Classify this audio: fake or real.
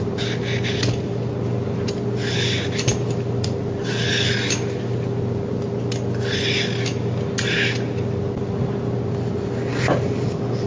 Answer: real